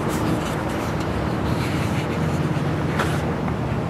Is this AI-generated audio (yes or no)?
yes